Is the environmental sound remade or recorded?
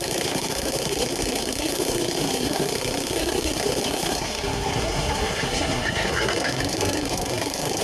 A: remade